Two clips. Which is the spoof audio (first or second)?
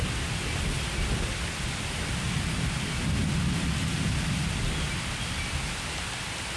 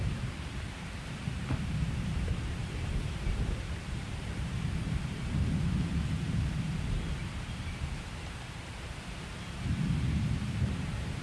second